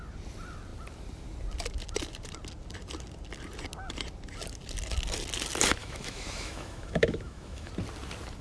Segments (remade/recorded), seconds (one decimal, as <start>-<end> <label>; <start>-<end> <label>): 0.0-5.8 recorded; 5.8-7.7 remade; 7.7-8.4 recorded